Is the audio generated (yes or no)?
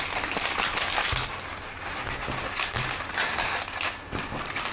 no